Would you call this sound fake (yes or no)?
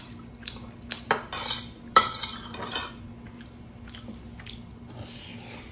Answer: no